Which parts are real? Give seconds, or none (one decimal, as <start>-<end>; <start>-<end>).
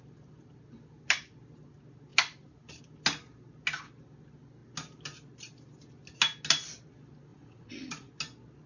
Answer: 0.0-7.3; 8.1-8.7